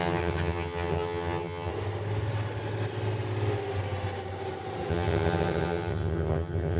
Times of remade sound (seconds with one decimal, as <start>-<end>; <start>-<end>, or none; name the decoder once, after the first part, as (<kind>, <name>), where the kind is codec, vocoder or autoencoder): 0.0-1.7 (vocoder, HiFi-GAN); 4.9-6.8